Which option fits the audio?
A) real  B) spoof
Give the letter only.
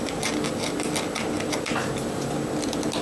A